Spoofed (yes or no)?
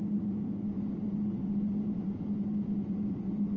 no